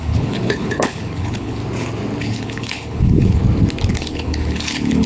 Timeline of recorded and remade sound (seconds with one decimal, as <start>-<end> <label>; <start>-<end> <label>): 0.0-1.6 remade; 1.6-2.2 recorded; 2.2-3.4 remade; 3.4-3.9 recorded; 3.9-5.1 remade